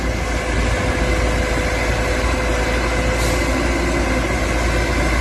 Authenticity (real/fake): real